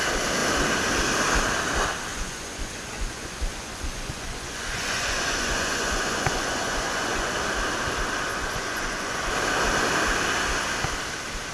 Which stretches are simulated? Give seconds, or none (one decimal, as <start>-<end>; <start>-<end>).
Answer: 2.1-7.3; 8.3-9.3